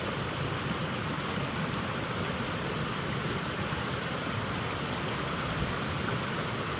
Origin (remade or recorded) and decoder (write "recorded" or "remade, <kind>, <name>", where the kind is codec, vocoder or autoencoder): recorded